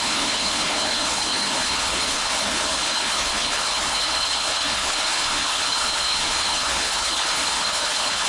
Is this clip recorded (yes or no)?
no